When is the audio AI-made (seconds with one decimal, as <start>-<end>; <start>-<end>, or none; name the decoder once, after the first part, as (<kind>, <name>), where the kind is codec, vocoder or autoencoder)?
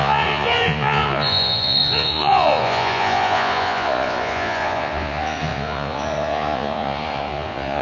0.0-7.8 (vocoder, Vocos)